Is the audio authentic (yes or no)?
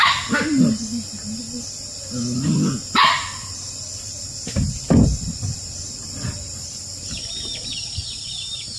yes